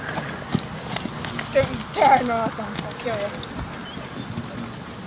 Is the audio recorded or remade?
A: recorded